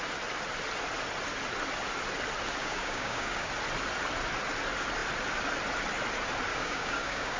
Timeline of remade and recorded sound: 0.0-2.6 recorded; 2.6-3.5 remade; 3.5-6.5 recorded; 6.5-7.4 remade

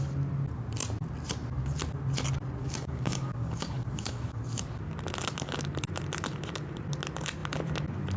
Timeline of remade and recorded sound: 0.0-2.6 recorded; 2.6-4.6 remade; 4.6-8.2 recorded

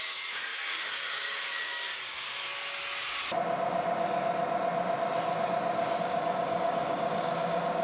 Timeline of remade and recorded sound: 0.0-1.9 remade; 1.9-6.0 recorded; 6.0-7.8 remade

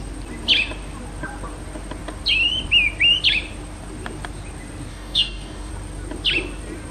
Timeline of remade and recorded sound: 0.0-4.9 recorded; 4.9-5.7 remade; 5.7-6.9 recorded

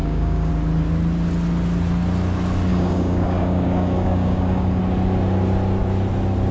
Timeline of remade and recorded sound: 0.0-0.5 remade; 0.5-2.7 recorded; 2.7-4.8 remade; 4.8-6.5 recorded

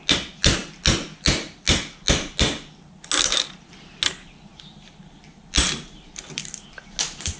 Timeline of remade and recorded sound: 0.0-7.4 recorded

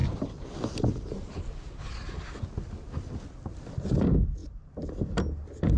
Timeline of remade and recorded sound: 0.0-5.8 recorded